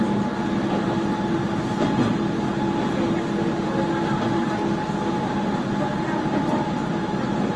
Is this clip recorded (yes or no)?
yes